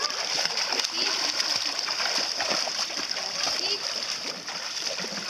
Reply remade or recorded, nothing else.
remade